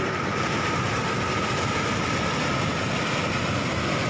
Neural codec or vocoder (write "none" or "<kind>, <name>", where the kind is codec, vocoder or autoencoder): none